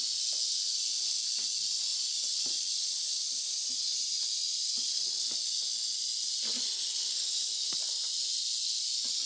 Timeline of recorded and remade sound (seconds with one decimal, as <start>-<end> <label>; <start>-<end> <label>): 0.0-1.9 recorded; 1.9-5.2 remade; 5.2-7.4 recorded; 7.4-8.5 remade; 8.5-9.3 recorded